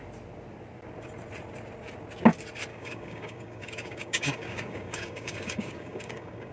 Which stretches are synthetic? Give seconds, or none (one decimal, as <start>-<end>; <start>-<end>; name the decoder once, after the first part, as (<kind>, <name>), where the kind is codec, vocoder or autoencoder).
2.7-6.5 (codec, DAC)